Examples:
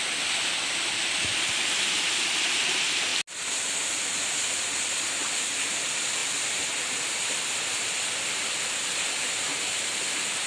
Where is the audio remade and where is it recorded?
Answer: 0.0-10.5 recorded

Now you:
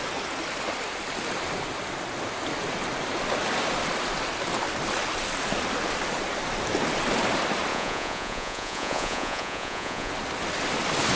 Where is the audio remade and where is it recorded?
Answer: 0.0-7.7 recorded; 7.7-10.1 remade; 10.1-11.2 recorded